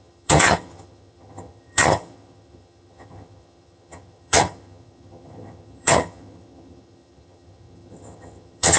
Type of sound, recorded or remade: remade